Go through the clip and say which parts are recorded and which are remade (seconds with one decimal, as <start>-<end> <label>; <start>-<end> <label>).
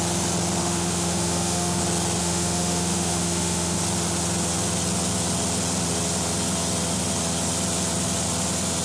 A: 0.0-0.6 recorded; 0.6-1.8 remade; 1.8-2.2 recorded; 2.2-3.8 remade; 3.8-8.8 recorded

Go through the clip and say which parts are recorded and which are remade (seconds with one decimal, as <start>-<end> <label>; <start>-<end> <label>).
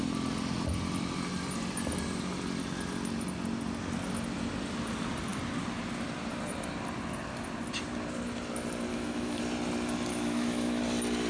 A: 0.0-8.9 recorded; 8.9-9.4 remade; 9.4-10.1 recorded; 10.1-10.8 remade; 10.8-11.3 recorded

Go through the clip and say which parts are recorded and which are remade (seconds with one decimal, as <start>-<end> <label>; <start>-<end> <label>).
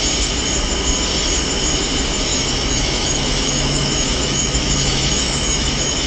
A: 0.0-2.3 recorded; 2.3-6.1 remade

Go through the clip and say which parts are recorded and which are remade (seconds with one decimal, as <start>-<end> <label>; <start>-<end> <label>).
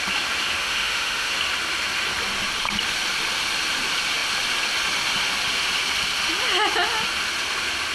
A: 0.0-0.6 recorded; 0.6-1.3 remade; 1.3-7.9 recorded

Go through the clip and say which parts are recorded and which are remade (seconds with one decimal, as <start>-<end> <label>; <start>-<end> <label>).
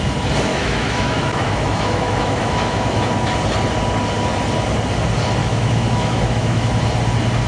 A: 0.0-0.5 recorded; 0.5-3.1 remade; 3.1-5.4 recorded; 5.4-6.7 remade; 6.7-7.5 recorded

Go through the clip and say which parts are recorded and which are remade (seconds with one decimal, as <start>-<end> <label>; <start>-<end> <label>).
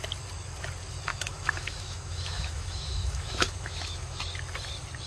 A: 0.0-1.1 recorded; 1.1-4.2 remade; 4.2-5.1 recorded